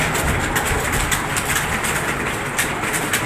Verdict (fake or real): real